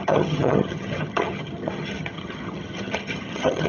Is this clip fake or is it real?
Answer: fake